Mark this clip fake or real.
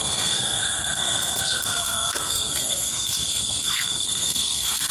fake